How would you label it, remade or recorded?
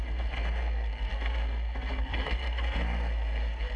remade